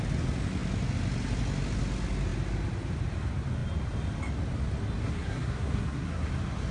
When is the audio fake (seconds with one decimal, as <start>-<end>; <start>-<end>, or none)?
5.0-6.3